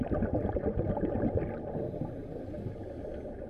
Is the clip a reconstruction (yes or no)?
no